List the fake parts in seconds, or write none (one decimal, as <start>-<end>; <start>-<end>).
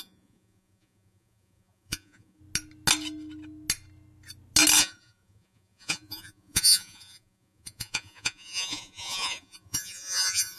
0.0-2.4; 4.8-10.6